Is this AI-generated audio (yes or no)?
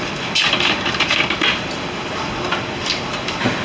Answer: no